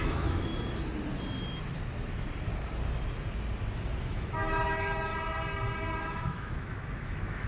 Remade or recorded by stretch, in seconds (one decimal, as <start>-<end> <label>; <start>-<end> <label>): 0.0-0.5 remade; 0.5-4.0 recorded; 4.0-5.1 remade; 5.1-6.0 recorded; 6.0-7.5 remade